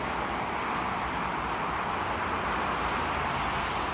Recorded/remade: recorded